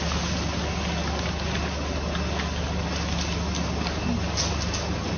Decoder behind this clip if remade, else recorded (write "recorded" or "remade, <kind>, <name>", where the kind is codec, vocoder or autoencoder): recorded